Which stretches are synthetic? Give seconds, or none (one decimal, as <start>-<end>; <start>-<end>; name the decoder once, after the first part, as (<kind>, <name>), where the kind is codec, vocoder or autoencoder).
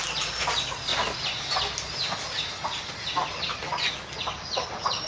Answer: none